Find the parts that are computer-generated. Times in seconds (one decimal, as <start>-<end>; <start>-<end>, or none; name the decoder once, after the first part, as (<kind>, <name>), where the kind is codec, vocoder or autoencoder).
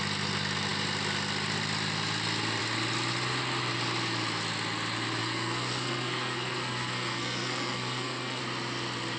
5.2-8.4 (codec, SNAC)